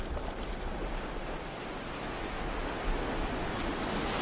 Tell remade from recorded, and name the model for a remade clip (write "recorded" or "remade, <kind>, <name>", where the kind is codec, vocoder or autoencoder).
recorded